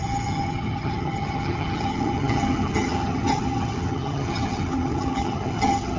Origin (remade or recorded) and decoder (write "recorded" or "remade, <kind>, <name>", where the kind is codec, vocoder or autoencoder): remade, vocoder, HiFi-GAN